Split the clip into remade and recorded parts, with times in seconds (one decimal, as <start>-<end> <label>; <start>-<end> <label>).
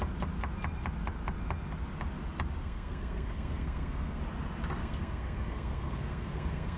0.0-2.6 recorded; 2.6-4.2 remade; 4.2-4.8 recorded; 4.8-6.8 remade